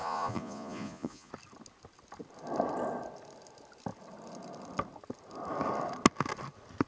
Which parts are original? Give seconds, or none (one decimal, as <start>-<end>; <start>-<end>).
1.3-6.9